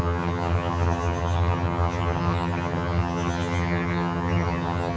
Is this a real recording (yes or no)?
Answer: no